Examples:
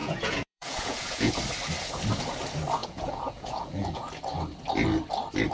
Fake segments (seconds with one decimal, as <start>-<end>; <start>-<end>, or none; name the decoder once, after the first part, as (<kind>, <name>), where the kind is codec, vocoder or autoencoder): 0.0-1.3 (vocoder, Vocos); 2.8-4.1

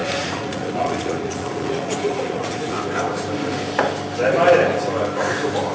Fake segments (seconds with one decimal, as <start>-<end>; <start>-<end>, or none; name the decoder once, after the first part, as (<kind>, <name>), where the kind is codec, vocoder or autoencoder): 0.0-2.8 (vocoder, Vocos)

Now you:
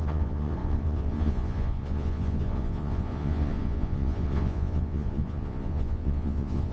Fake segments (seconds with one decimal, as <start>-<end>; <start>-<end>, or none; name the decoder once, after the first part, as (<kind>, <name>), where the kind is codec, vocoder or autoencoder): 0.0-6.7 (vocoder, Vocos)

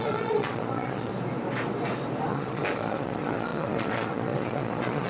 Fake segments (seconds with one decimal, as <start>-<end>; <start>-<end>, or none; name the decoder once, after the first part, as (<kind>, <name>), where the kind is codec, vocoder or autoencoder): 0.0-1.1 (vocoder, Vocos); 2.3-5.1

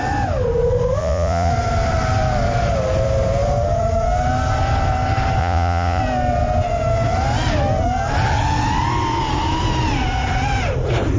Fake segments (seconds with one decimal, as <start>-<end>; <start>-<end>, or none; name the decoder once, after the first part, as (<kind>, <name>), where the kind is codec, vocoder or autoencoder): 1.0-1.5 (vocoder, Vocos); 5.4-6.0

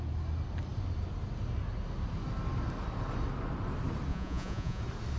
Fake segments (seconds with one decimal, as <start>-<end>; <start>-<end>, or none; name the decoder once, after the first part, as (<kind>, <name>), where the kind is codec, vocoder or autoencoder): 4.1-4.8 (vocoder, Vocos)